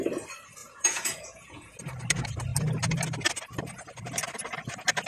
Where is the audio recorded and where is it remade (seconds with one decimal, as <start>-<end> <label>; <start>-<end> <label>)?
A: 0.0-0.6 recorded; 0.6-1.8 remade; 1.8-5.1 recorded